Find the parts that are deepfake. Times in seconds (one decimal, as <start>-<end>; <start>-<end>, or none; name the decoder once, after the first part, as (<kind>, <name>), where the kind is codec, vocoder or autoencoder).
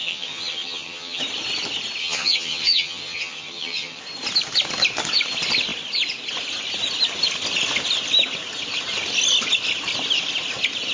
0.0-1.2 (vocoder, HiFi-GAN); 2.0-4.0